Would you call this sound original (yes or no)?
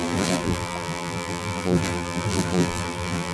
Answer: no